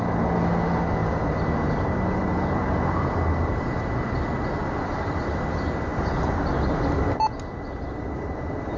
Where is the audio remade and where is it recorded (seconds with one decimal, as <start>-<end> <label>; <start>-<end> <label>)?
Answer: 0.0-1.0 recorded; 1.0-1.8 remade; 1.8-2.2 recorded; 2.2-3.1 remade; 3.1-8.8 recorded